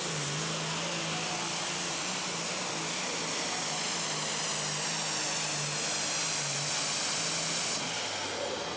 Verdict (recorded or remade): recorded